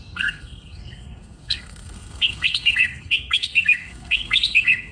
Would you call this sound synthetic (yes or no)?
yes